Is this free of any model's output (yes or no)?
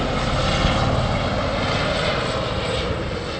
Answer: yes